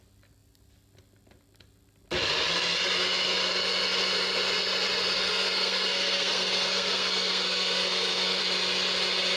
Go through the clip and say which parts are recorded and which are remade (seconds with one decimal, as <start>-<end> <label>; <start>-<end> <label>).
0.0-5.3 recorded; 5.3-8.4 remade; 8.4-9.4 recorded